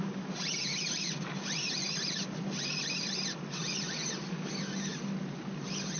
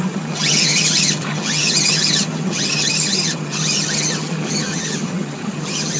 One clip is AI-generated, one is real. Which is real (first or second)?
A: first